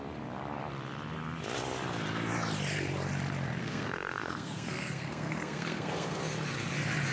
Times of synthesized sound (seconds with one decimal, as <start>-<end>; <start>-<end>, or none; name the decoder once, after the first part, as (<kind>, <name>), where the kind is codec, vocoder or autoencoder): 3.6-6.2 (codec, SNAC)